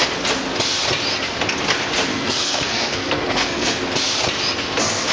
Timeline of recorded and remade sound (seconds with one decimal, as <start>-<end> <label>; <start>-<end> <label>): 0.0-2.1 recorded; 2.1-3.8 remade; 3.8-5.1 recorded